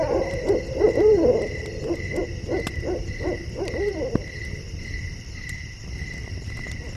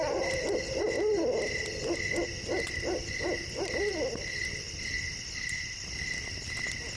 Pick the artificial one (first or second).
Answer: first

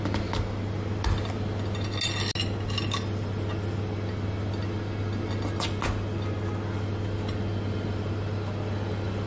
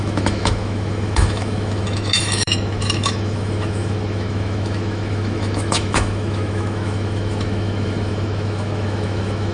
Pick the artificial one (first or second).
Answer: second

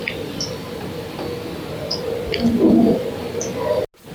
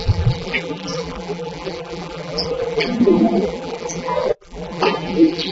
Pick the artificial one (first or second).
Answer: second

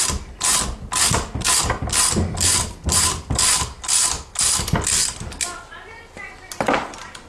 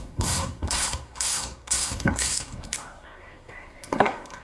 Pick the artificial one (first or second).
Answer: second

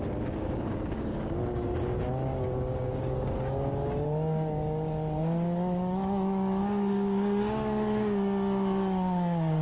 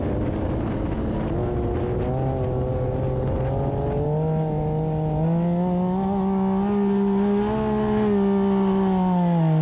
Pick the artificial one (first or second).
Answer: first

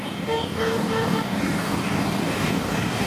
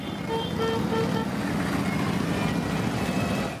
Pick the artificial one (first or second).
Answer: first